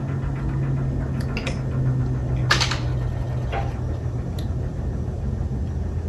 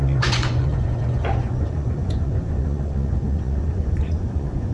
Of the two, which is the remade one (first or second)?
second